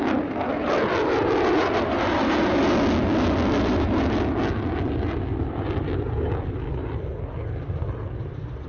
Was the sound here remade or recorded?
recorded